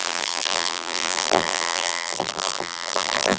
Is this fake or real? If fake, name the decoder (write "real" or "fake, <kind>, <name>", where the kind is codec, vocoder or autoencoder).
fake, vocoder, BigVGAN v2